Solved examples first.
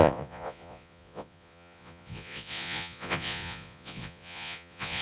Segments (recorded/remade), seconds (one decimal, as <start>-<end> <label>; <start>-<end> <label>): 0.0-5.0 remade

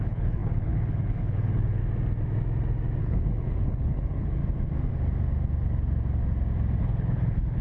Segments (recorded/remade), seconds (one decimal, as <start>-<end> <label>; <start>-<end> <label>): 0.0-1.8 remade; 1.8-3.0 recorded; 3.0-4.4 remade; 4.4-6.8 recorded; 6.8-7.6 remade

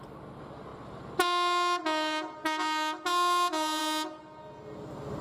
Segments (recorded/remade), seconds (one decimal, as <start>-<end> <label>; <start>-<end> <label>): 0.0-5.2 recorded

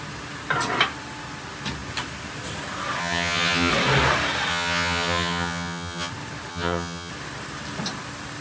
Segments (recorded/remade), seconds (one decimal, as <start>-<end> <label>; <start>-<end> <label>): 0.0-3.0 recorded; 3.0-3.7 remade; 3.7-4.5 recorded; 4.5-6.1 remade; 6.1-6.5 recorded; 6.5-7.1 remade; 7.1-8.4 recorded

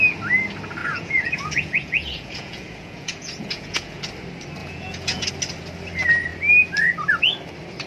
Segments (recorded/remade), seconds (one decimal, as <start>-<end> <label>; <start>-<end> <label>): 0.0-0.8 recorded; 0.8-4.0 remade; 4.0-4.6 recorded; 4.6-5.3 remade; 5.3-7.9 recorded

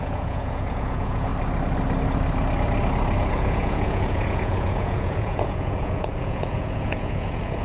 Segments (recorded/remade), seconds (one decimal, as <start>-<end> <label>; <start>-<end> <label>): 0.0-1.3 remade; 1.3-3.3 recorded; 3.3-7.6 remade

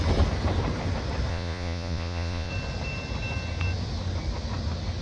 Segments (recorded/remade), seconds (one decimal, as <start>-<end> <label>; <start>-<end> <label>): 0.0-1.3 recorded; 1.3-2.5 remade; 2.5-5.0 recorded

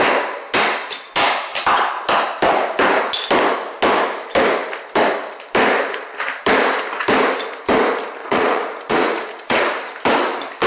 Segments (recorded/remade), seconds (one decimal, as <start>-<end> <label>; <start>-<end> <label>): 0.0-8.2 recorded; 8.2-9.6 remade; 9.6-10.7 recorded